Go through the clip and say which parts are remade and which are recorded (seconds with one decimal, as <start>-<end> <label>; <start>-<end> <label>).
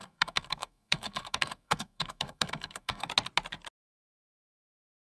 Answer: 0.0-3.1 remade; 3.1-5.1 recorded